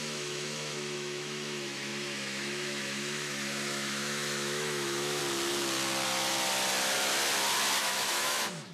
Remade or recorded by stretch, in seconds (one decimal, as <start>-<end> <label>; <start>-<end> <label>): 0.0-5.2 remade; 5.2-7.8 recorded; 7.8-8.7 remade